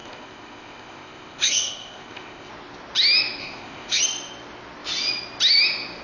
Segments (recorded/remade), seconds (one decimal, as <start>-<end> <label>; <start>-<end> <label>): 0.0-2.5 remade; 2.5-3.4 recorded; 3.4-4.0 remade; 4.0-6.0 recorded